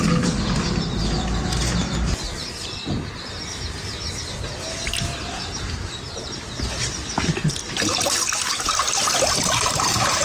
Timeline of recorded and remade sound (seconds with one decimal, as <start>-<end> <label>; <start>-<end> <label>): 0.0-10.2 recorded